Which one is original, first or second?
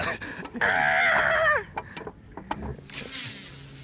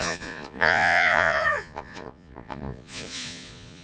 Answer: first